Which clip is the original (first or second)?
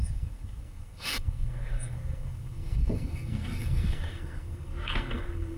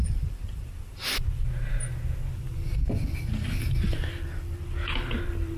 second